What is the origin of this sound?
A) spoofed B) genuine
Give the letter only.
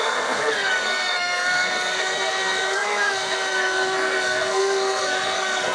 A